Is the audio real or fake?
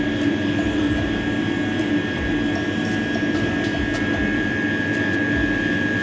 real